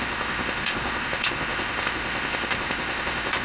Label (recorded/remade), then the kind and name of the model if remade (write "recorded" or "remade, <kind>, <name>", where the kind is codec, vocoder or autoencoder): remade, codec, ZipCodec